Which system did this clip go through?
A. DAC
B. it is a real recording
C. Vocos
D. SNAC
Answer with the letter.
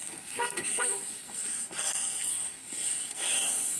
D